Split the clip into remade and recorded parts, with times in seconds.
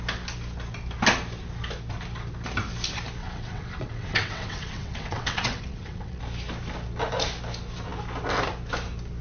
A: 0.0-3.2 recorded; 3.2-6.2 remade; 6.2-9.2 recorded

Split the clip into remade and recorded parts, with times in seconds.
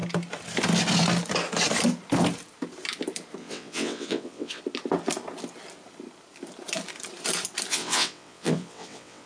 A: 0.0-3.4 recorded; 3.4-4.6 remade; 4.6-7.7 recorded; 7.7-9.3 remade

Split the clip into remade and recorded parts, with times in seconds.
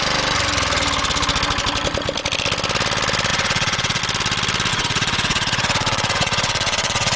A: 0.0-3.3 recorded; 3.3-4.0 remade; 4.0-4.7 recorded; 4.7-7.2 remade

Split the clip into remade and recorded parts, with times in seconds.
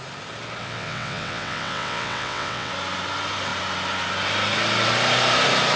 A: 0.0-0.6 recorded; 0.6-2.7 remade; 2.7-5.8 recorded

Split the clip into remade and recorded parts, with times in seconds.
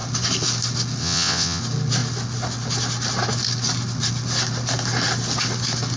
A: 0.0-1.0 recorded; 1.0-1.6 remade; 1.6-6.0 recorded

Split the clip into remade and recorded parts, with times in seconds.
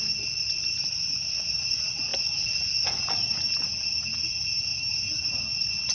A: 0.0-5.9 recorded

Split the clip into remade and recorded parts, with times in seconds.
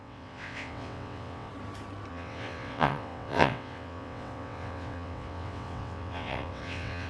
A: 0.0-1.5 remade; 1.5-2.1 recorded; 2.1-7.1 remade